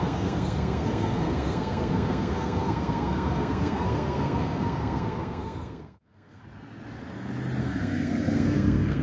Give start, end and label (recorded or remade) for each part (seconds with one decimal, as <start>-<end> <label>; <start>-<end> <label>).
0.0-6.4 remade; 6.4-7.6 recorded; 7.6-9.0 remade